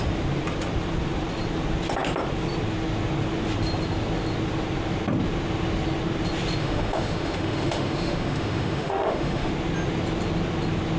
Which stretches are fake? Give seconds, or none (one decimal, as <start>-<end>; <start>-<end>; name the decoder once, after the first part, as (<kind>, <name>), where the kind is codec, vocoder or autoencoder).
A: 6.6-9.5 (autoencoder, DAC-VAE)